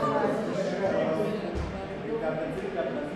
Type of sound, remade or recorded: recorded